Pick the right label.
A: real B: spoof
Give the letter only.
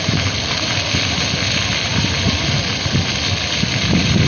A